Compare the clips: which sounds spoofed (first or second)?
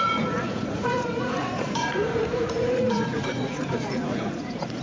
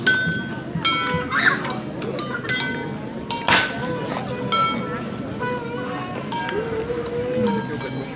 first